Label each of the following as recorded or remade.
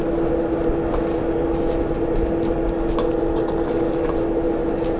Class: recorded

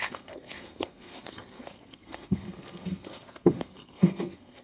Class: remade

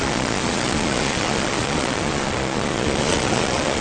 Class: remade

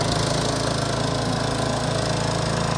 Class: recorded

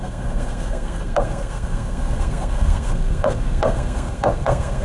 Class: remade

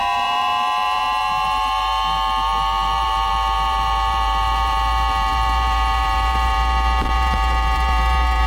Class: remade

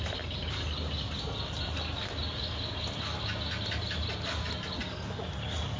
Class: recorded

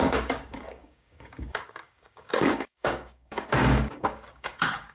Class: remade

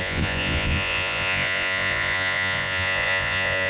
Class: remade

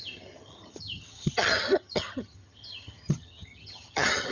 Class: remade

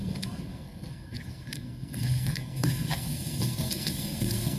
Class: remade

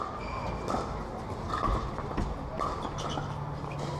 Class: recorded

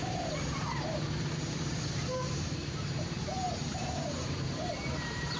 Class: remade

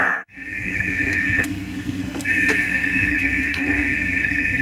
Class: remade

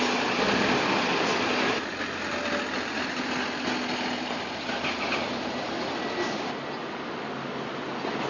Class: recorded